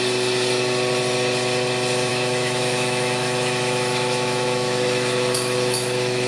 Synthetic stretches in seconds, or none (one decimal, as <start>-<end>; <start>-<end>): 2.1-6.3